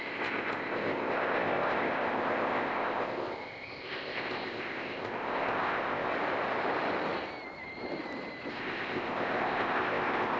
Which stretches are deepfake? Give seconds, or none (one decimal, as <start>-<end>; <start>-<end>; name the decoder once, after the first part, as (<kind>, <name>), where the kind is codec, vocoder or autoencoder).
0.0-6.1 (codec, ZipCodec); 8.5-10.4